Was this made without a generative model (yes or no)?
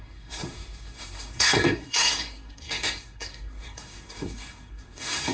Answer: no